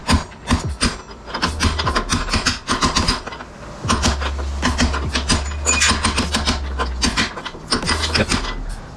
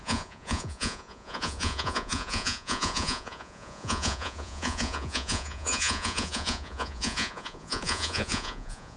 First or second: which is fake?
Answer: second